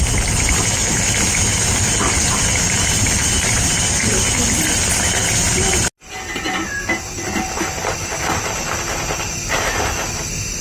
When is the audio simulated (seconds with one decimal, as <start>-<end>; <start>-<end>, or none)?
none